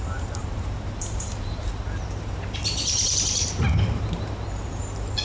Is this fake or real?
fake